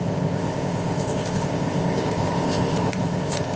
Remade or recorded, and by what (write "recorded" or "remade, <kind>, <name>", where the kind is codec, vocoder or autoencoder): remade, codec, ZipCodec